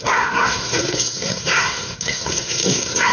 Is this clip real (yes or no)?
no